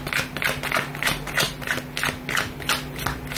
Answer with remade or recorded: recorded